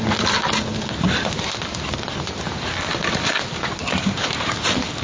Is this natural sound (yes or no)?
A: yes